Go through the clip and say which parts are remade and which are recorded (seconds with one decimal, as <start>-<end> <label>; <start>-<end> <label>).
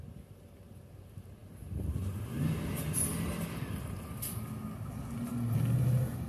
0.0-6.3 recorded